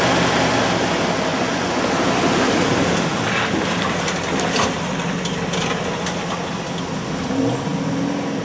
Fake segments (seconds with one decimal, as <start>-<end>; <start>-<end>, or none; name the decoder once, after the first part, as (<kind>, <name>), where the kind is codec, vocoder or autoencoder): 1.3-1.8 (vocoder, Vocos)